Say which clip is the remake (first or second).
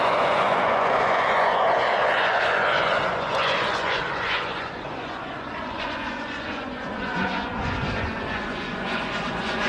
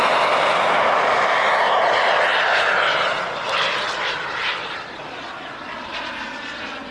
first